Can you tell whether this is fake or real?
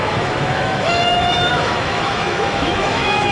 fake